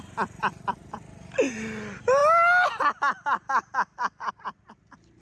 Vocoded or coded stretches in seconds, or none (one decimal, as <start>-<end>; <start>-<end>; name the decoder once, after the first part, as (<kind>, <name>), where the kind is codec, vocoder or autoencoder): none